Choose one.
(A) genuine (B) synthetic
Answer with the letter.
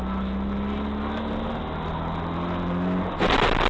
A